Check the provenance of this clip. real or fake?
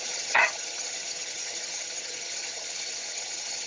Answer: fake